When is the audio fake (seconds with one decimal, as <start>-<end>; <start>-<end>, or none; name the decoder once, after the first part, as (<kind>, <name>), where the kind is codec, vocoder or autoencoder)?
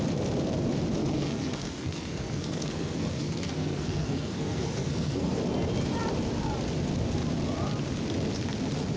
1.0-5.3 (codec, SNAC)